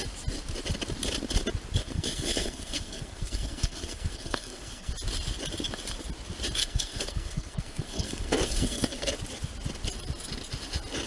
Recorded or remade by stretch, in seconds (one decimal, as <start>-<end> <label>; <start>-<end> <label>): 0.0-1.8 recorded; 1.8-4.9 remade; 4.9-6.6 recorded; 6.6-9.1 remade; 9.1-11.1 recorded